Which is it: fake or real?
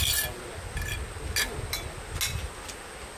real